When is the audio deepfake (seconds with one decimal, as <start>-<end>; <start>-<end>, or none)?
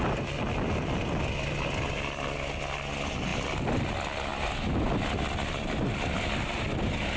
none